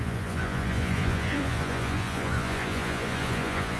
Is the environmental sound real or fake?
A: fake